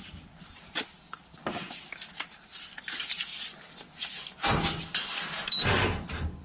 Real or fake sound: real